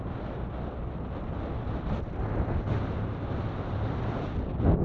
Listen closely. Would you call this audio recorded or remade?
recorded